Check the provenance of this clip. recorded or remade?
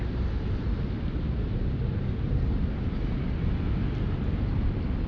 recorded